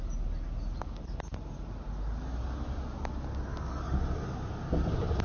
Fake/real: real